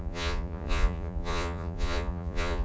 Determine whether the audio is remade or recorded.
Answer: remade